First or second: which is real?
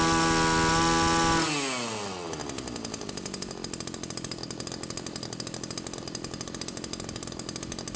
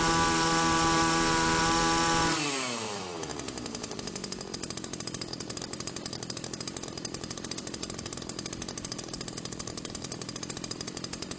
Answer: first